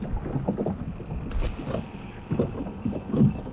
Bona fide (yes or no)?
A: yes